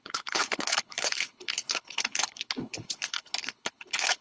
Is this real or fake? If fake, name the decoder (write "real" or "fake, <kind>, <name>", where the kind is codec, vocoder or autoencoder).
fake, codec, HILCodec